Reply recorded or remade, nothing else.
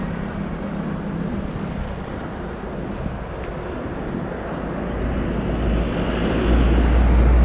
recorded